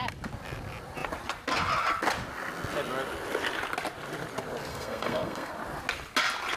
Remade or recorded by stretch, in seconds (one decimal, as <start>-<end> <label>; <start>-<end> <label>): 0.0-4.7 recorded; 4.7-5.5 remade; 5.5-6.6 recorded